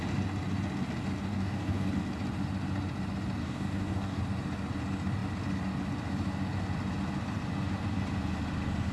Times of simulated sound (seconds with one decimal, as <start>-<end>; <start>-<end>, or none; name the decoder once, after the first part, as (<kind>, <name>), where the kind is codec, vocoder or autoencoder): 1.3-1.9 (codec, DAC); 3.4-4.2